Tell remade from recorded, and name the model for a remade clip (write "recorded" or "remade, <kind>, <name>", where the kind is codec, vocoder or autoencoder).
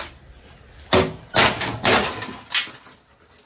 recorded